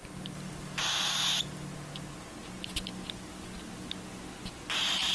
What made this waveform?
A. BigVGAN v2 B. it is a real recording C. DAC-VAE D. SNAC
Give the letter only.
B